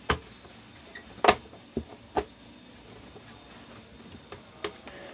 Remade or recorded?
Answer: recorded